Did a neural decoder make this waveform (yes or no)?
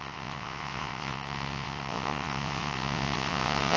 yes